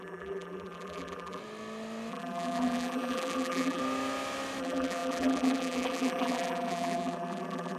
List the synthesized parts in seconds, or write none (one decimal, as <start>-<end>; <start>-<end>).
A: 0.0-1.4; 2.1-3.8; 4.6-7.8

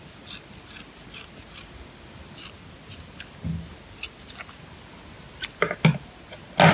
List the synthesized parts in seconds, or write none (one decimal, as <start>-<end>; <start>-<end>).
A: none

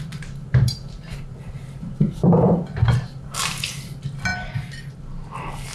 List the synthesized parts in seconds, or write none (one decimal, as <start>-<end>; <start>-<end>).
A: 0.4-3.8

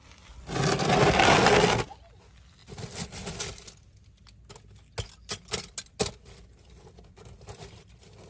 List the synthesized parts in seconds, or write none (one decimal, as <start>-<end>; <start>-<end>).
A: none

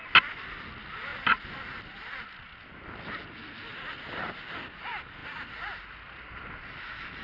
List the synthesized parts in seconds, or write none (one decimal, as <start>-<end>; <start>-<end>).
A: 3.7-4.7